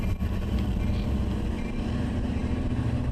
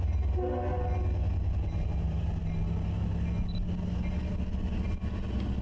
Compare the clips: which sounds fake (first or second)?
first